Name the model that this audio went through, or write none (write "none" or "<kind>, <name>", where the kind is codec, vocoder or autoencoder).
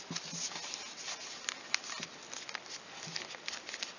none